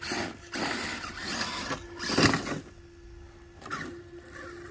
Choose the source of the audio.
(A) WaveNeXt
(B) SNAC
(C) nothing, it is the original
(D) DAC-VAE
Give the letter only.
C